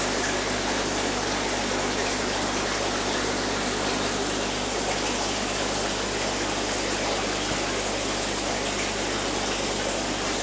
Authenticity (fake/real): real